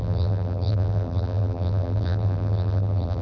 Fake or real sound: fake